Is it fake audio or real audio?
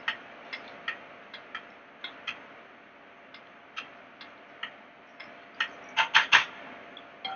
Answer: real